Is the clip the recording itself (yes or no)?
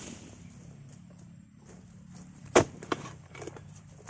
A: no